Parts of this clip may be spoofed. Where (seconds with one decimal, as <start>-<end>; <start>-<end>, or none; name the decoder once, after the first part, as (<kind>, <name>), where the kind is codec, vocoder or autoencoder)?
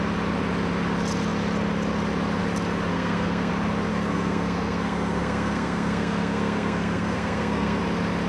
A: 2.9-3.5 (codec, SNAC); 3.9-7.8